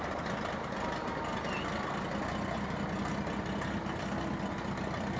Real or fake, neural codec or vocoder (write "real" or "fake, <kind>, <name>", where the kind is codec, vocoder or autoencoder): real